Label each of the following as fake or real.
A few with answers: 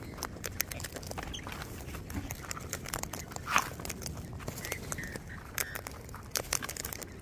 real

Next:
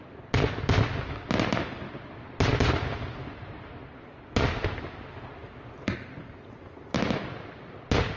real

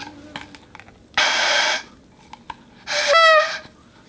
real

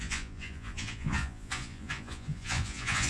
fake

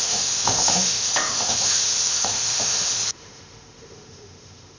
fake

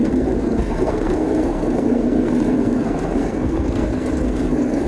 fake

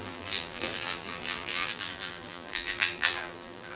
fake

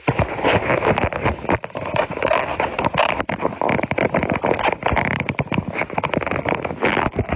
real